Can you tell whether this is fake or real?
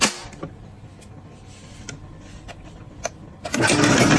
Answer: real